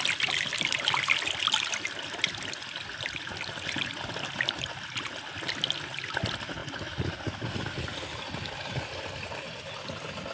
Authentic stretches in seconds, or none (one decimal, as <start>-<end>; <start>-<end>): 0.0-10.3